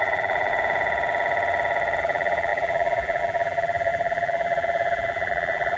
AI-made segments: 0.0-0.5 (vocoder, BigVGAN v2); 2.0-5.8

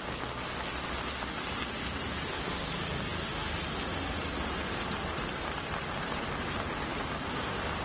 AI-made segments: none

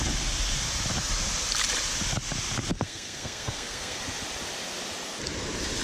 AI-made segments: 2.7-4.0 (codec, SNAC)

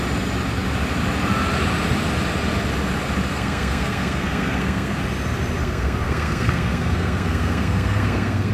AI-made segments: 3.3-5.0 (codec, SNAC); 5.6-8.5

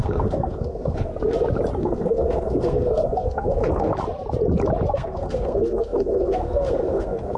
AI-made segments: 0.0-1.1 (codec, SNAC); 1.8-3.9; 4.9-7.4